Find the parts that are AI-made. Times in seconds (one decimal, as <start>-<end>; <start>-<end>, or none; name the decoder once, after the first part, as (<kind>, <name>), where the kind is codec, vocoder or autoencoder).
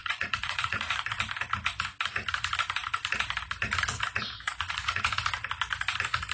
0.0-1.0 (vocoder, Vocos); 4.5-5.1